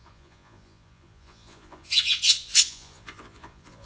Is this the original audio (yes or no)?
no